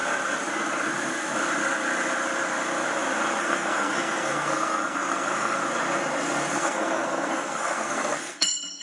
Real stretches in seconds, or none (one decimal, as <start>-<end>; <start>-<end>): 0.0-3.4; 5.6-6.5